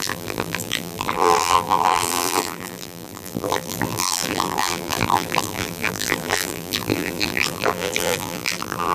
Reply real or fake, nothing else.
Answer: fake